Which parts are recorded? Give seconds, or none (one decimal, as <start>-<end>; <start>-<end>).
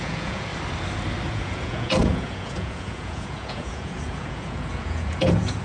0.5-1.3